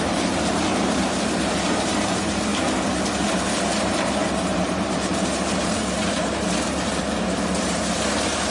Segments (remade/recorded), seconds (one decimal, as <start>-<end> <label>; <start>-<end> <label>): 0.0-0.7 remade; 0.7-1.4 recorded; 1.4-2.5 remade; 2.5-3.8 recorded; 3.8-8.5 remade